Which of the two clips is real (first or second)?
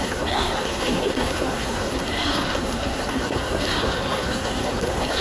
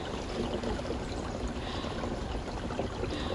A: second